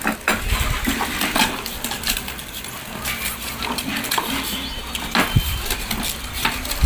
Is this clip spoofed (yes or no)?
no